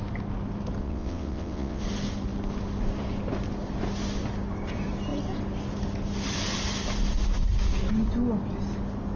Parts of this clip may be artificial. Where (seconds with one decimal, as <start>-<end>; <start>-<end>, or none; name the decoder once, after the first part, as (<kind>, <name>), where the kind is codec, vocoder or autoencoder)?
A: 0.8-1.8 (vocoder, WaveNeXt)